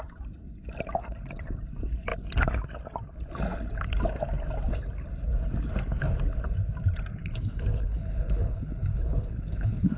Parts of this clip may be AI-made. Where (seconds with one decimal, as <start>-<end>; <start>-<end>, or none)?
7.2-10.0